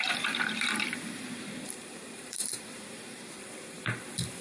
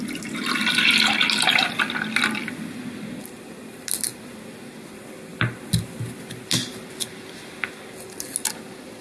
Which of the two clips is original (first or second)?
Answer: second